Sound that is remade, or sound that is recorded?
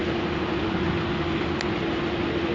recorded